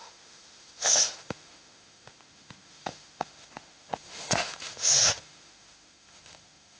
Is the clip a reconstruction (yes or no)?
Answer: yes